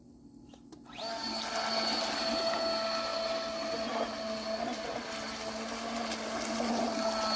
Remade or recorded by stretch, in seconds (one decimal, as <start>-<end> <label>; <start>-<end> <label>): 0.0-7.4 recorded